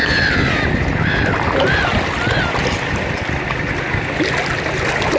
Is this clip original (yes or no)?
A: yes